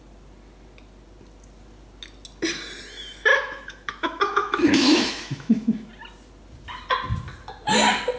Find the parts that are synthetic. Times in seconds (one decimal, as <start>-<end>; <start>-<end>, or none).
3.3-5.9